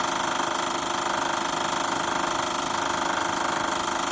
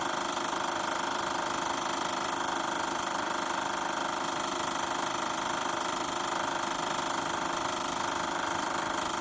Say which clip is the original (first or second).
first